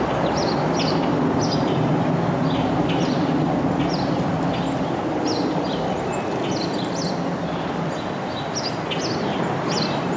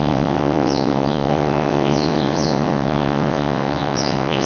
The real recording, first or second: first